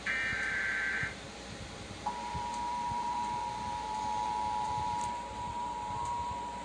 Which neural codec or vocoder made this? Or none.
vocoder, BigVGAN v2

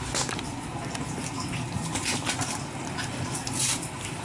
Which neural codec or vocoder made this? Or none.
vocoder, BigVGAN v2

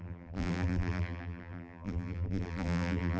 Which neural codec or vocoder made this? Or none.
vocoder, BigVGAN v2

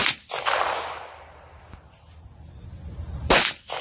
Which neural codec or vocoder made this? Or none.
none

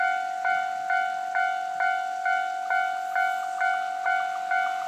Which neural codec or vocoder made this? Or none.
none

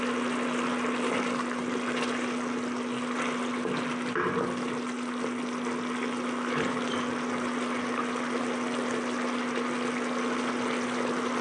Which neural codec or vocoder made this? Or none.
none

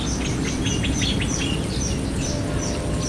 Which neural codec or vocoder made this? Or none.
none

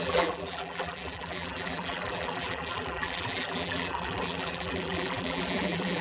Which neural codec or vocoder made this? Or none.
vocoder, BigVGAN v2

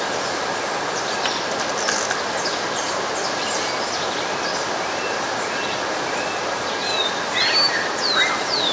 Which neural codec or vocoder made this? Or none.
none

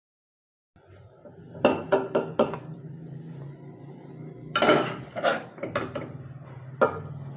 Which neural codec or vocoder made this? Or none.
none